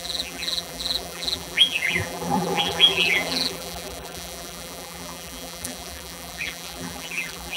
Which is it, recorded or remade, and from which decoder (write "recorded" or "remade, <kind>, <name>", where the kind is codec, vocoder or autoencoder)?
remade, vocoder, BigVGAN v2